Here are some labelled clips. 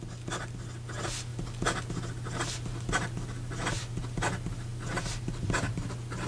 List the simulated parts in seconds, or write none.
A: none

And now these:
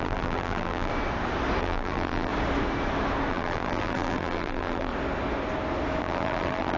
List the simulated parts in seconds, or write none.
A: 0.0-0.9 (vocoder, BigVGAN v2); 1.6-2.3; 3.3-4.9; 6.0-6.8

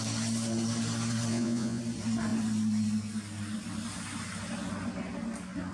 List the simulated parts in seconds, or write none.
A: 1.3-1.8 (vocoder, Vocos)

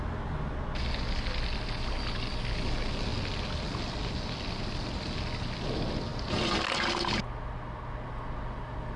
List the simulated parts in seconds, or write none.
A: none

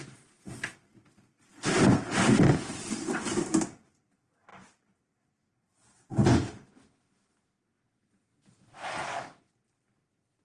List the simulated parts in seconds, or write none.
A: 0.9-3.4 (vocoder, BigVGAN v2); 4.5-6.5

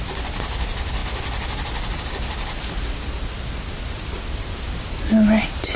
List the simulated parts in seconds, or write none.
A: none